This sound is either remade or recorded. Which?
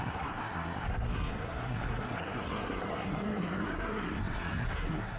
remade